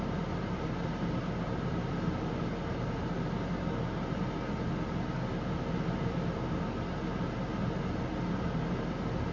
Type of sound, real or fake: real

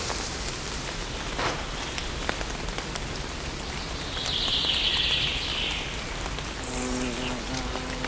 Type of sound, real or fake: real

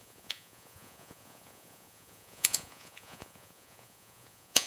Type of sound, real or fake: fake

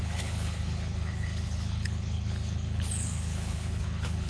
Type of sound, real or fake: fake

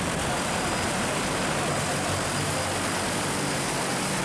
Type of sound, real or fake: real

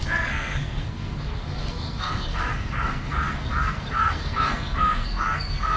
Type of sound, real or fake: fake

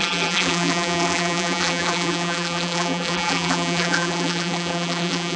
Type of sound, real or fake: fake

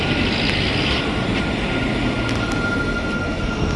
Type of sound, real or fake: real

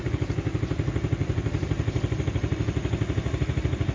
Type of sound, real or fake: real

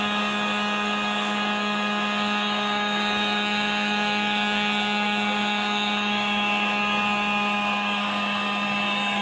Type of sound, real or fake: fake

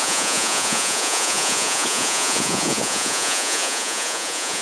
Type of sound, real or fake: fake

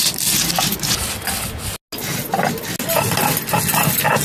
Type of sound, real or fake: real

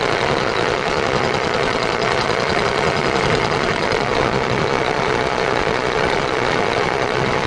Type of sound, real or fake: fake